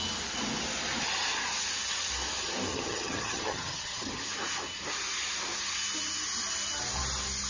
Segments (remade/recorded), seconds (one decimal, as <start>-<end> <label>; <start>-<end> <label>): 0.0-2.7 recorded; 2.7-4.2 remade; 4.2-7.5 recorded